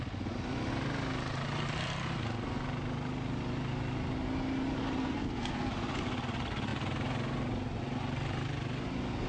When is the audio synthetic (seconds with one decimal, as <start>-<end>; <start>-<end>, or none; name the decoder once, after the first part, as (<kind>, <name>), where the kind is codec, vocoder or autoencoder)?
5.0-5.7 (codec, SNAC)